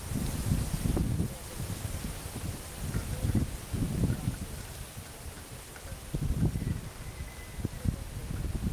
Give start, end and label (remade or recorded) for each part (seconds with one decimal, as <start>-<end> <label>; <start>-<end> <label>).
0.0-8.7 recorded